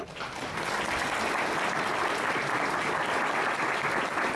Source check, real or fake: real